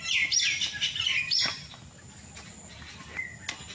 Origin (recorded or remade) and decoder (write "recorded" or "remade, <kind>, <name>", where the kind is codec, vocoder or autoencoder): recorded